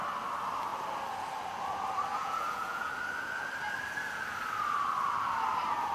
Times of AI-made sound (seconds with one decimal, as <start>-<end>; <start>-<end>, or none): 2.1-2.9